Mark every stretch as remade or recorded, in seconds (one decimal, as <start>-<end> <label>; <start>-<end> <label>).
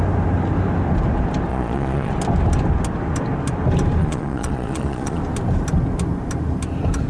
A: 0.0-1.5 recorded; 1.5-2.1 remade; 2.1-4.0 recorded; 4.0-5.2 remade; 5.2-7.1 recorded